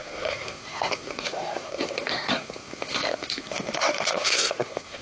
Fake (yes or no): yes